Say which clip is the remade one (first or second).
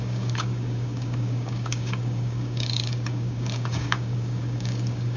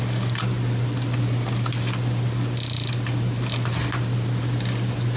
first